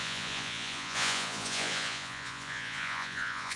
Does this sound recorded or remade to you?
remade